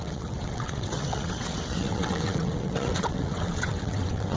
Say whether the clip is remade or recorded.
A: remade